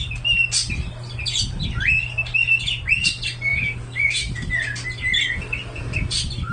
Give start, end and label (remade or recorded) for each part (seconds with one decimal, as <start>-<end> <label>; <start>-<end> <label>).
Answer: 0.0-3.5 recorded; 3.5-4.5 remade; 4.5-6.5 recorded